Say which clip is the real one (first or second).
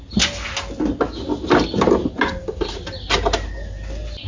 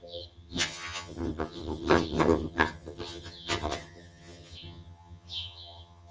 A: first